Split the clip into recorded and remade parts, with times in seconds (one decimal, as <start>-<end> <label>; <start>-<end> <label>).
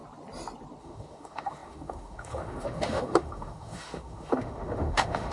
0.0-0.8 recorded; 0.8-5.3 remade